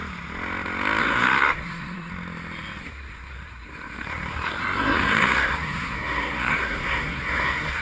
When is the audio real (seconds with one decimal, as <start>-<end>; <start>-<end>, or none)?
0.0-1.0; 2.1-2.8